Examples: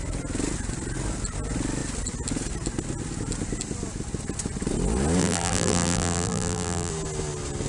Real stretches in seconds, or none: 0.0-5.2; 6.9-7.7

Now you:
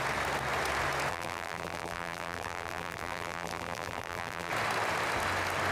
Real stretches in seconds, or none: 0.0-1.1; 4.5-5.7